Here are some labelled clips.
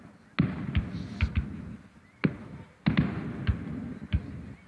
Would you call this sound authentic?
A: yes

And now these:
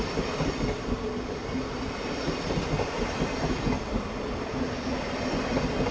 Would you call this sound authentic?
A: yes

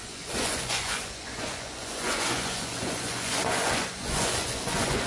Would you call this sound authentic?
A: no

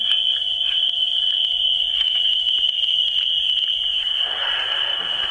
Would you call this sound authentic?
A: yes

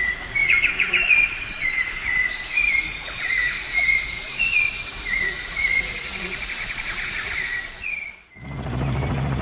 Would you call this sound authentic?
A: no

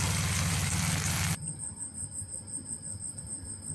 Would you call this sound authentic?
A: yes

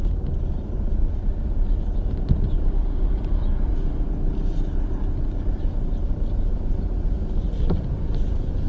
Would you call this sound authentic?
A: yes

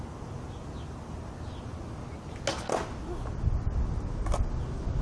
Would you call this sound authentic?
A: yes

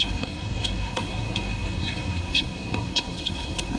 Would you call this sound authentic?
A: no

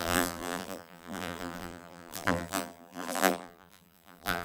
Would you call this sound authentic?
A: no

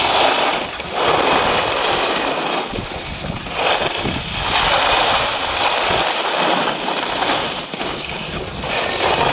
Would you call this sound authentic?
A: yes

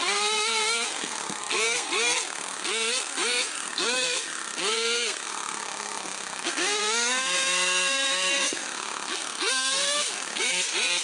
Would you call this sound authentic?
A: no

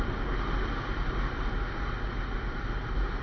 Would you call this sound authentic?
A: yes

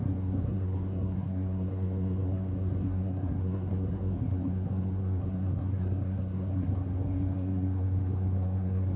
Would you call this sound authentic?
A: no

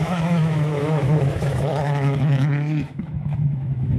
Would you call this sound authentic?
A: no